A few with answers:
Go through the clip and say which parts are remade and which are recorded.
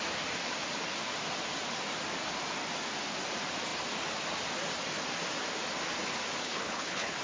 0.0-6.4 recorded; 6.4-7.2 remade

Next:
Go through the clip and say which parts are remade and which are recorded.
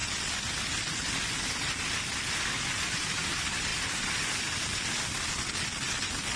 0.0-6.4 recorded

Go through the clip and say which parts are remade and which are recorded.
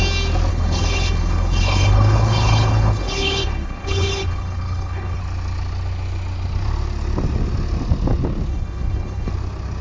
0.0-0.5 recorded; 0.5-5.2 remade; 5.2-8.5 recorded; 8.5-9.3 remade; 9.3-9.8 recorded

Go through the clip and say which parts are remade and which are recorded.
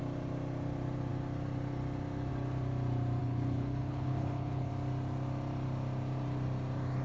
0.0-3.2 recorded; 3.2-4.7 remade; 4.7-7.0 recorded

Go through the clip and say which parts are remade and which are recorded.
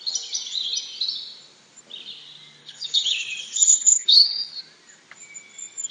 0.0-2.6 recorded; 2.6-4.6 remade; 4.6-5.9 recorded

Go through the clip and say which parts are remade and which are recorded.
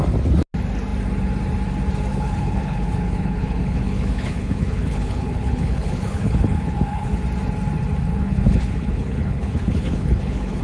0.0-2.1 recorded; 2.1-7.2 remade; 7.2-8.1 recorded; 8.1-10.6 remade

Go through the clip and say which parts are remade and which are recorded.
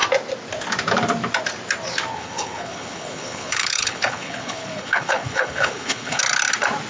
0.0-2.1 recorded; 2.1-6.2 remade; 6.2-6.9 recorded